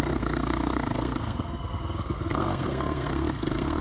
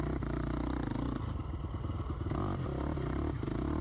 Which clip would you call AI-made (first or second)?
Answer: first